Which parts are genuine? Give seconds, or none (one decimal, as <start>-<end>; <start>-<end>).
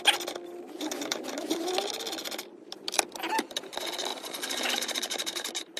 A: 0.0-4.1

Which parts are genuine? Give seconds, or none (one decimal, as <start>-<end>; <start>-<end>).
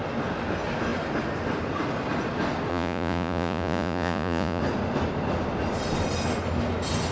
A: 0.0-2.7; 4.6-7.1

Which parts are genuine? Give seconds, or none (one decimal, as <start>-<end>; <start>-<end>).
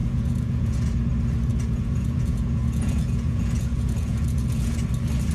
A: 0.9-1.5; 4.7-5.3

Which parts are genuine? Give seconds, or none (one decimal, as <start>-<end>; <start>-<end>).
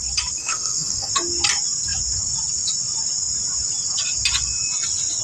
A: 0.0-0.4; 1.1-5.2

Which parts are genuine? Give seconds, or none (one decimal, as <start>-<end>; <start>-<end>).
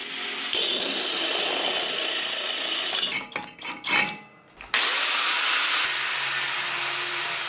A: 0.0-7.5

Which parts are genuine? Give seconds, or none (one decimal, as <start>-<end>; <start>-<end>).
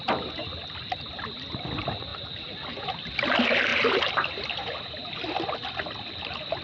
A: 0.0-6.6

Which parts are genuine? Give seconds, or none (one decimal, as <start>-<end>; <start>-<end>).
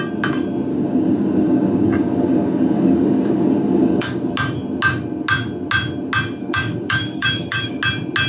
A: 0.0-0.7; 4.3-6.4; 7.8-8.3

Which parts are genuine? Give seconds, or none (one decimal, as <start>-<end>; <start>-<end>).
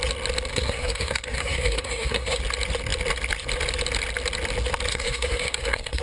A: 0.0-0.5; 2.4-4.9